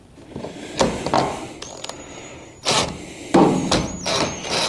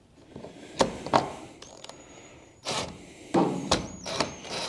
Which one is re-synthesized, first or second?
second